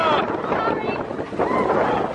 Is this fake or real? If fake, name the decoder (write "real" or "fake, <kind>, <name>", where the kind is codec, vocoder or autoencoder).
real